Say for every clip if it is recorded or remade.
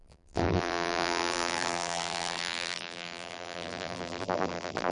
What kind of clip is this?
remade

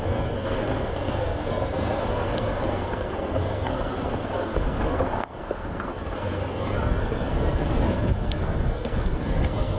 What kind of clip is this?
remade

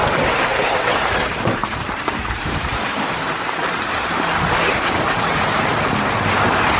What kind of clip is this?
remade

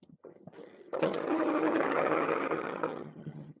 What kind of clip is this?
remade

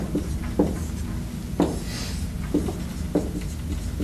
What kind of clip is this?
recorded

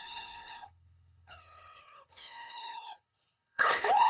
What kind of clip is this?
remade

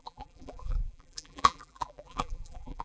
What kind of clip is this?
remade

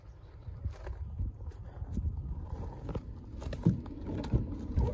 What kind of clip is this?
remade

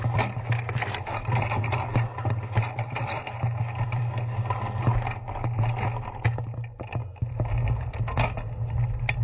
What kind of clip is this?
recorded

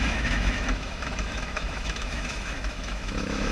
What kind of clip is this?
remade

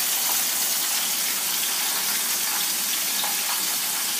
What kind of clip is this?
recorded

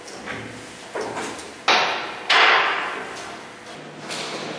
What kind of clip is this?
recorded